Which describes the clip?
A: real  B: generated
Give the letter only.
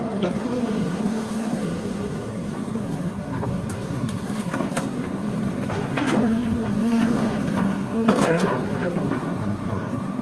B